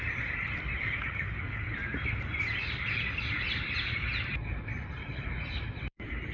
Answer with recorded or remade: remade